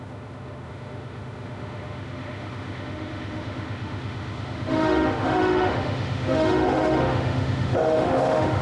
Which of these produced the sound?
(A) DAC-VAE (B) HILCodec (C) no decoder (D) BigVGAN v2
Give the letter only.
A